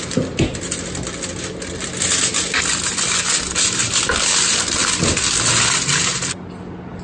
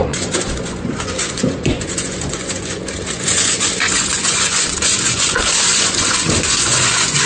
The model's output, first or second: second